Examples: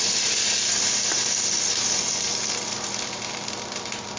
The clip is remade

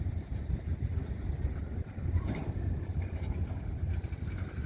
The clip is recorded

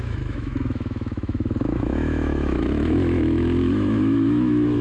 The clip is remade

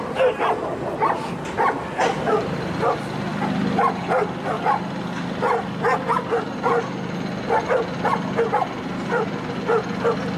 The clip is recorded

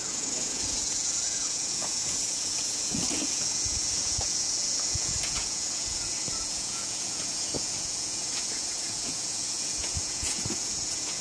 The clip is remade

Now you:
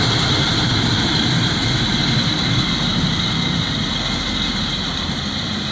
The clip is recorded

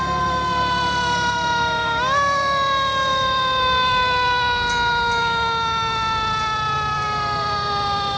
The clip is recorded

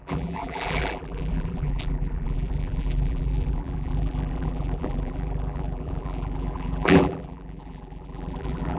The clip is remade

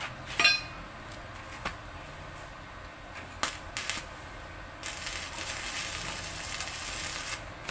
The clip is recorded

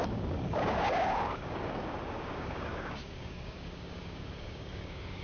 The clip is remade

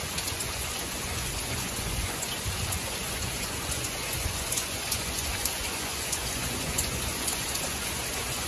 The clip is remade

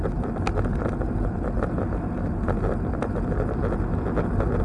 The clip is recorded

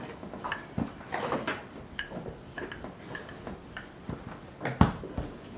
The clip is recorded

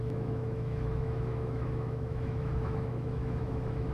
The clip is remade